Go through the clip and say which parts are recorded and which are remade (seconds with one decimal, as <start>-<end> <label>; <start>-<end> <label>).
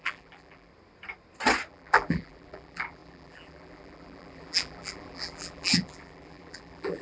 0.0-0.7 remade; 0.7-1.7 recorded; 1.7-7.0 remade